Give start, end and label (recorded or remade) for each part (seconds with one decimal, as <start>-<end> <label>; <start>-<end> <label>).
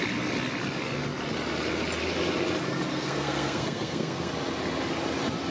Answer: 0.0-2.9 recorded; 2.9-4.3 remade; 4.3-5.5 recorded